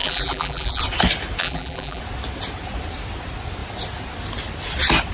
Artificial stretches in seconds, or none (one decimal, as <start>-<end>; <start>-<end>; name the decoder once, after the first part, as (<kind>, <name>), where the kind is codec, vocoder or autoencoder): 0.0-0.8 (vocoder, BigVGAN v2); 1.4-2.0